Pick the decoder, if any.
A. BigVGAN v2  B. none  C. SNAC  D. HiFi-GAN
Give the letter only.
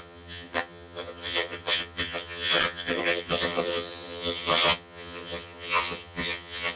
D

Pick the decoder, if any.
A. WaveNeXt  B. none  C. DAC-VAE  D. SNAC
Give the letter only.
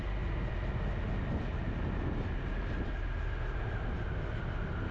B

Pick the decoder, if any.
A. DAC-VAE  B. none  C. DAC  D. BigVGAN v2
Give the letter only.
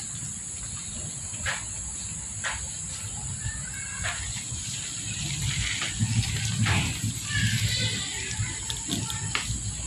B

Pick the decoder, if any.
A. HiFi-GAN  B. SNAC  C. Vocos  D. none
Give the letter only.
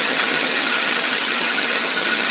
A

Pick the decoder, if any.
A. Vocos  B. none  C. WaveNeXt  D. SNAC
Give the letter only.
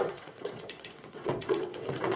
C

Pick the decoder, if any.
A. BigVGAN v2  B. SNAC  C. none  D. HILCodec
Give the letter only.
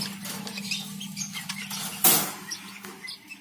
C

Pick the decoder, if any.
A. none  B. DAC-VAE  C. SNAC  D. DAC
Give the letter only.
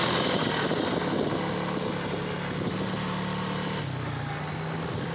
A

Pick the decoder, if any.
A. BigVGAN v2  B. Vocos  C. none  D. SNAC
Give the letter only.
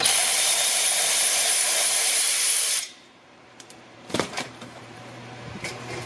A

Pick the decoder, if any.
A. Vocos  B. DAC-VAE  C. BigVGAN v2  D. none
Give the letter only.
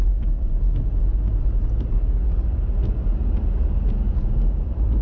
D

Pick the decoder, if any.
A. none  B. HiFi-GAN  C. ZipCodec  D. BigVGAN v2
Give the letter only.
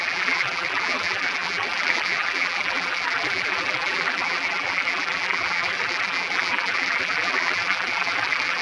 D